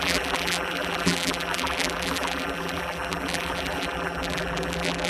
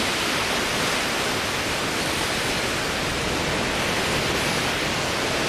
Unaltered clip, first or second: second